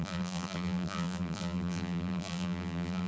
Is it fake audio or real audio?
fake